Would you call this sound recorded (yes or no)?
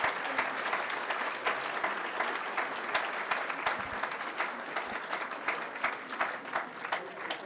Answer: yes